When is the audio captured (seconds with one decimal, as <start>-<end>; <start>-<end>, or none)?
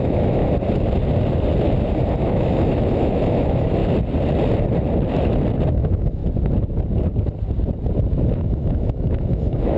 0.4-2.2; 3.8-5.7; 6.2-8.3